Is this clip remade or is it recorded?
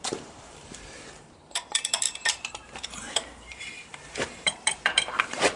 remade